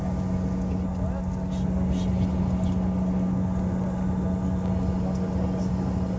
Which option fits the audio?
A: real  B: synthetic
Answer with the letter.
A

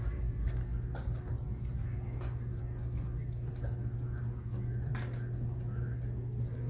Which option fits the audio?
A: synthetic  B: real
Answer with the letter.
B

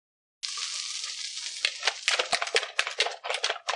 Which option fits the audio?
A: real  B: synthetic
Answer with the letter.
A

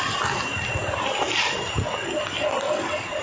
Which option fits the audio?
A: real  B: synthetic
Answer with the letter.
A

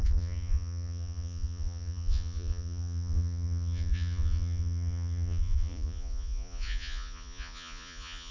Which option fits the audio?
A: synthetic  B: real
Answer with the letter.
A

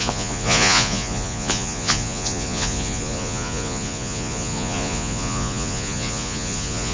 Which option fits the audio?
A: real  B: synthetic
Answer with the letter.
B